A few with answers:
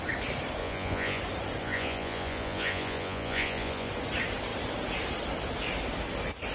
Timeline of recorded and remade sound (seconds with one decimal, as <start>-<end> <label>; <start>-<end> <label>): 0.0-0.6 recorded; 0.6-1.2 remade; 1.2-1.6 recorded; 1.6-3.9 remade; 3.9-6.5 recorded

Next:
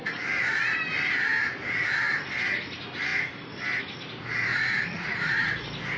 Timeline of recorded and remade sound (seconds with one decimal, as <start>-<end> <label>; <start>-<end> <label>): 0.0-4.5 recorded; 4.5-5.5 remade; 5.5-6.0 recorded

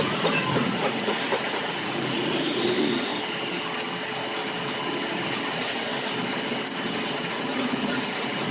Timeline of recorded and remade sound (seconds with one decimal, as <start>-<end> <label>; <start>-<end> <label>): 0.0-3.1 remade; 3.1-5.5 recorded; 5.5-5.9 remade; 5.9-7.3 recorded; 7.3-8.5 remade

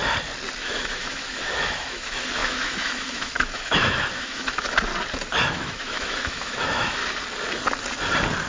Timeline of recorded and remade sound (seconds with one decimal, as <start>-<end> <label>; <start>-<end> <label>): 0.0-0.6 recorded; 0.6-4.9 remade; 4.9-5.5 recorded; 5.5-7.0 remade; 7.0-8.5 recorded

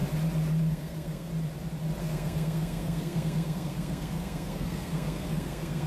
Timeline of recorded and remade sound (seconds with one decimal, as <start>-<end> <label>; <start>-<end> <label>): 0.0-0.6 recorded; 0.6-1.3 remade; 1.3-2.0 recorded; 2.0-5.9 remade

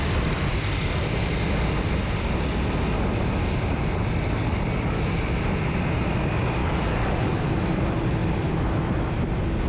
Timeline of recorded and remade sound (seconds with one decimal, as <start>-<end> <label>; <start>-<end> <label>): 0.0-4.4 recorded; 4.4-5.0 remade; 5.0-6.6 recorded; 6.6-7.4 remade; 7.4-9.7 recorded

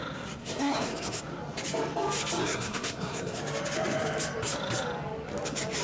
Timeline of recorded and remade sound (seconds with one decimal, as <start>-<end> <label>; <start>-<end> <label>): 0.0-0.4 recorded; 0.4-1.2 remade; 1.2-2.4 recorded; 2.4-3.4 remade; 3.4-5.8 recorded

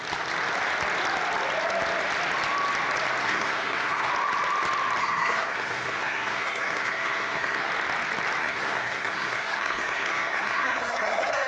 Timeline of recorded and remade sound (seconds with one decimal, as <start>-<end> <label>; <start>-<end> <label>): 0.0-3.2 recorded; 3.2-4.1 remade; 4.1-5.0 recorded; 5.0-7.7 remade; 7.7-8.4 recorded; 8.4-11.5 remade